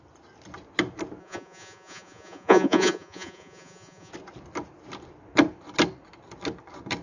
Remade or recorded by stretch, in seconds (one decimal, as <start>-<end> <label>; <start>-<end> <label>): 0.0-1.2 recorded; 1.2-4.1 remade; 4.1-7.0 recorded